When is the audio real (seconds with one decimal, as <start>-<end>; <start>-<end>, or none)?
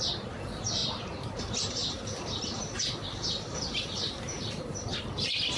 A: none